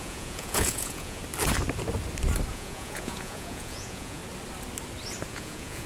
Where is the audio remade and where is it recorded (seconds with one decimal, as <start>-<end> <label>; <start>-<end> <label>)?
0.0-1.2 remade; 1.2-2.5 recorded; 2.5-4.2 remade; 4.2-5.3 recorded; 5.3-5.9 remade